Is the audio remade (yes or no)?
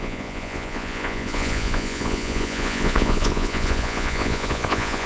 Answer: yes